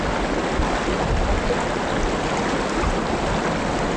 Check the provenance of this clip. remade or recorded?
recorded